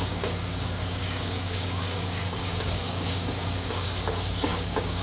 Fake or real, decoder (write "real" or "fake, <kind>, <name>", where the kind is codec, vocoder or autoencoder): fake, codec, DAC